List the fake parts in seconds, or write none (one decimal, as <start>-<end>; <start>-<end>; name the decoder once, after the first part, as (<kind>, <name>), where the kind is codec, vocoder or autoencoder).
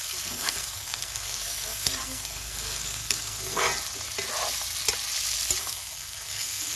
0.0-3.7 (codec, SNAC); 5.6-6.8